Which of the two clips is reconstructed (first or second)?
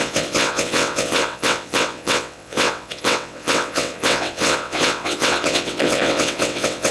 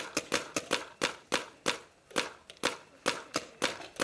first